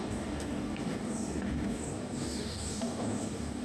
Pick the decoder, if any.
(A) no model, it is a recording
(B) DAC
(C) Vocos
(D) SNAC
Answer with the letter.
B